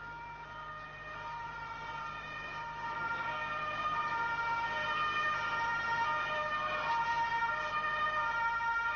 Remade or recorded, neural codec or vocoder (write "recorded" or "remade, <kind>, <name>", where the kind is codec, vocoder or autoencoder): recorded